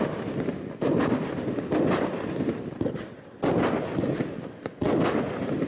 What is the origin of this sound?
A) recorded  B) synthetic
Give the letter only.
A